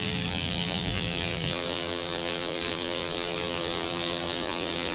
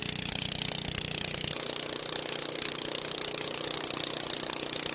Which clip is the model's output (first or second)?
first